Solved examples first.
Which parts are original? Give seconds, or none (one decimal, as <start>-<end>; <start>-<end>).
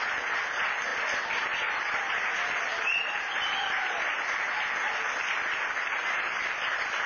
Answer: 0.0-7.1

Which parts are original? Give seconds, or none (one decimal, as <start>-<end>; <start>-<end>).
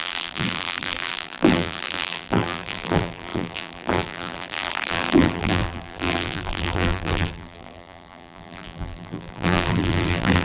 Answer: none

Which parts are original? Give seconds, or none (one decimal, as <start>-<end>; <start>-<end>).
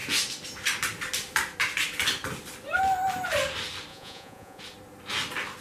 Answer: 0.0-3.9; 4.6-5.6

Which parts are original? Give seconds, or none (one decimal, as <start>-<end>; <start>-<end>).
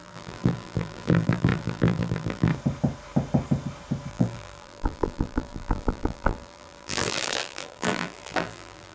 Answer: 2.5-4.1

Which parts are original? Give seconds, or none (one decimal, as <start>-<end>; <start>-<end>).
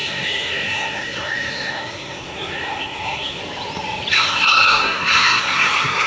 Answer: 3.4-4.1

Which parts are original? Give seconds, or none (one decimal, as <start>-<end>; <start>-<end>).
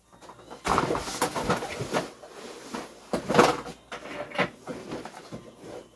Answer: 0.0-1.7; 3.3-4.7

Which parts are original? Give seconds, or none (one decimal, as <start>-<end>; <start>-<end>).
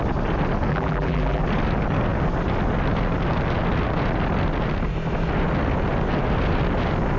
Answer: 0.0-0.7; 1.4-7.2